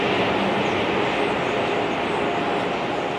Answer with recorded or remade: recorded